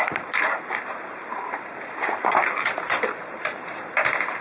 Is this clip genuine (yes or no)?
no